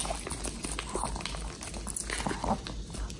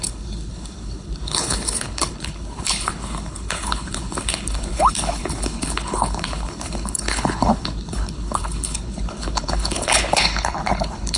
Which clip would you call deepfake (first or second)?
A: second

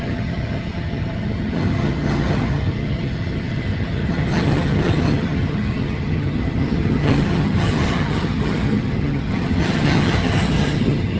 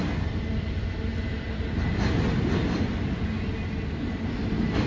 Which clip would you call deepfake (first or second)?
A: first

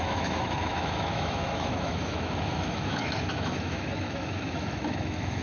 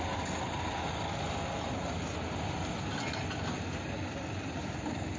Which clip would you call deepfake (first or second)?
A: first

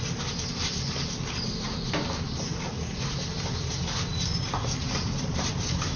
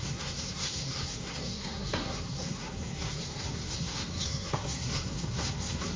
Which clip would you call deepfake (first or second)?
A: second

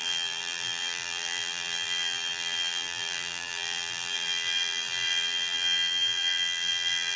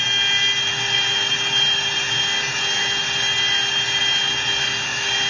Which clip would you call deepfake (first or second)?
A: first